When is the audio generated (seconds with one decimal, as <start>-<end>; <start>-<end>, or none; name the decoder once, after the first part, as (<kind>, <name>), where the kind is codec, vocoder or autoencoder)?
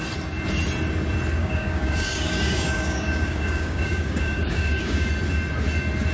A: 1.4-5.1 (codec, DAC)